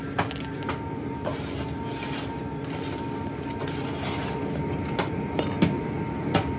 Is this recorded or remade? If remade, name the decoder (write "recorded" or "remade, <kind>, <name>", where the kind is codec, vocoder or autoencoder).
recorded